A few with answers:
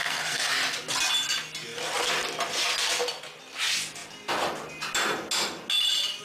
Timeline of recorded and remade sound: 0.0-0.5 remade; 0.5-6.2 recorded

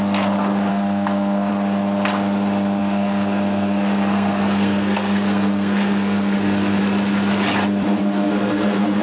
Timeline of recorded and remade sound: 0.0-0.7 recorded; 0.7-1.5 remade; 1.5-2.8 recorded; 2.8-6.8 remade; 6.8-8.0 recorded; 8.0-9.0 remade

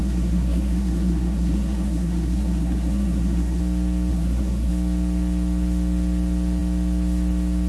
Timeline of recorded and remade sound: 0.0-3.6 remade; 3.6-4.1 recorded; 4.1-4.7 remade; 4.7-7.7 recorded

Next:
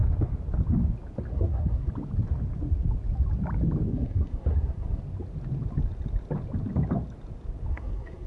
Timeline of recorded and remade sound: 0.0-1.3 recorded; 1.3-1.9 remade; 1.9-3.9 recorded; 3.9-5.0 remade; 5.0-7.7 recorded; 7.7-8.3 remade

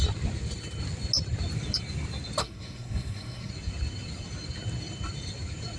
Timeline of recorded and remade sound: 0.0-2.4 recorded; 2.4-3.5 remade; 3.5-5.8 recorded

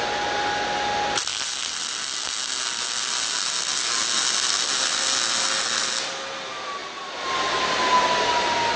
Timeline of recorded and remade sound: 0.0-8.8 recorded

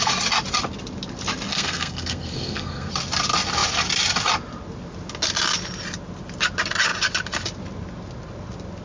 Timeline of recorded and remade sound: 0.0-1.5 recorded; 1.5-2.9 remade; 2.9-8.8 recorded

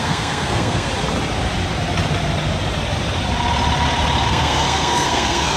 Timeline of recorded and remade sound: 0.0-0.9 remade; 0.9-4.3 recorded; 4.3-5.6 remade